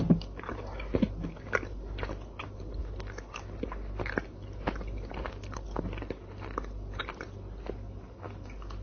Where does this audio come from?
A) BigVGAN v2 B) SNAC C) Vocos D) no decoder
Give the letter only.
D